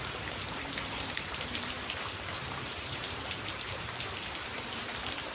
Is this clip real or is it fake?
fake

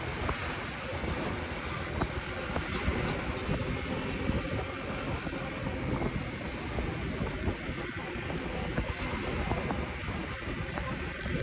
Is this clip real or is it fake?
real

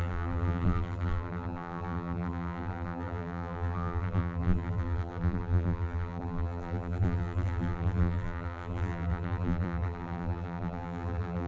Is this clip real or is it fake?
fake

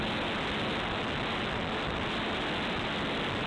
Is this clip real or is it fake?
real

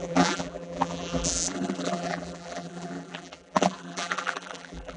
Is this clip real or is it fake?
fake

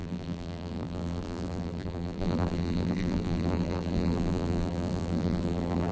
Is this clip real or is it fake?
fake